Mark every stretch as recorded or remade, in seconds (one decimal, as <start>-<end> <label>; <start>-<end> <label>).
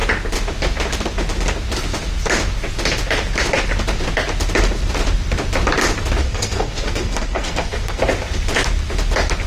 0.0-6.2 recorded; 6.2-8.0 remade; 8.0-9.5 recorded